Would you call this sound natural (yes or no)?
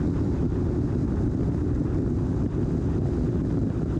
yes